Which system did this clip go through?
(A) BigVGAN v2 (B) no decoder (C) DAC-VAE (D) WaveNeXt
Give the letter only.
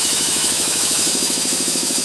C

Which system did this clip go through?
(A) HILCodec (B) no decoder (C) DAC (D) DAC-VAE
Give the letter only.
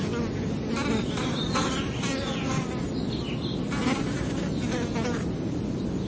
B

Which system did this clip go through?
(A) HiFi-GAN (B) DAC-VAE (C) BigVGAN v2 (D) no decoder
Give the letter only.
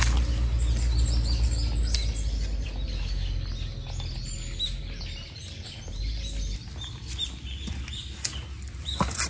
D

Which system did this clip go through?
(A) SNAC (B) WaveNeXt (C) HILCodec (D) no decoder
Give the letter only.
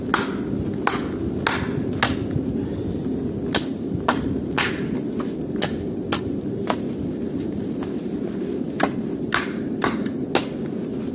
D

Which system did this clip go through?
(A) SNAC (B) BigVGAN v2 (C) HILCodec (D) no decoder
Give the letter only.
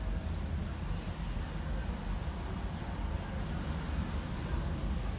D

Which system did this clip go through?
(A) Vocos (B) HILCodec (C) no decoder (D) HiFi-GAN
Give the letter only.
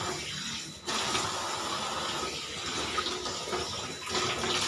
C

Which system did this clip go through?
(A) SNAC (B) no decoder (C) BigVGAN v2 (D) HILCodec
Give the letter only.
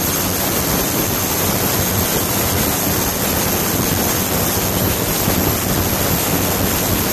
B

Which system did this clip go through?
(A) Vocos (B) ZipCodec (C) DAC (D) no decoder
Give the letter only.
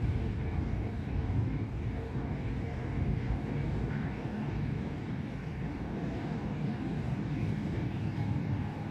C